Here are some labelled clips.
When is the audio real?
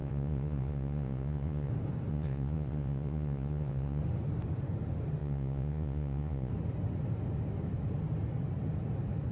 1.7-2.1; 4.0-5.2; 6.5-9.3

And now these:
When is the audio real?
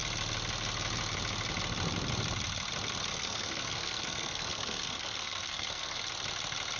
0.0-3.1; 6.0-6.8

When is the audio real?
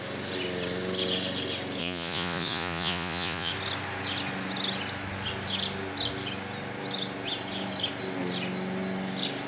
0.0-1.8; 3.5-9.5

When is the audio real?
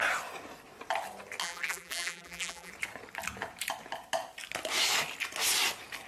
0.0-1.4; 2.7-6.1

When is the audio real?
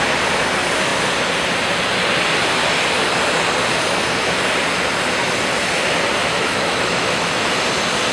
0.0-6.2; 7.5-8.1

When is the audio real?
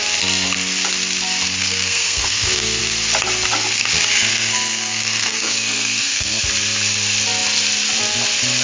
0.0-1.6; 2.8-4.3; 6.4-8.6